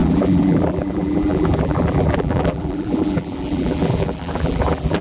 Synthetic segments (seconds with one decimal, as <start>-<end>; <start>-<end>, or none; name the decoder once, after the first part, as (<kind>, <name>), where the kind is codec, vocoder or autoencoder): 0.0-5.0 (vocoder, BigVGAN v2)